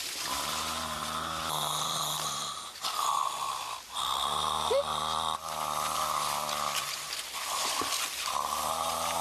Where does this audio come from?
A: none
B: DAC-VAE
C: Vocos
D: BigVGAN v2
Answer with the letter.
A